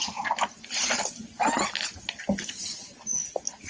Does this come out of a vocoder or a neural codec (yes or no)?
no